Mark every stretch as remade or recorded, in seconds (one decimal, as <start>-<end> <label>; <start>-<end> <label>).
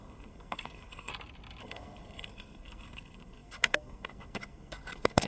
0.0-1.1 remade; 1.1-1.6 recorded; 1.6-5.3 remade